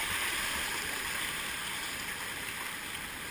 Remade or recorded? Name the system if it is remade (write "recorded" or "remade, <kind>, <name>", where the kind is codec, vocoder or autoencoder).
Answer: recorded